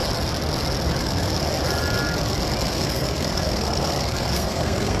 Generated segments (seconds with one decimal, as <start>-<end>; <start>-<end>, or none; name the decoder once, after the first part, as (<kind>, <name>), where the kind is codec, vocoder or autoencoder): 1.0-1.4 (codec, SNAC); 2.7-5.0